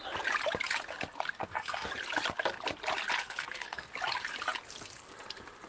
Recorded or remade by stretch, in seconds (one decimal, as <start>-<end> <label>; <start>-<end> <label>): 0.0-1.4 recorded; 1.4-1.9 remade; 1.9-3.2 recorded; 3.2-3.9 remade; 3.9-5.7 recorded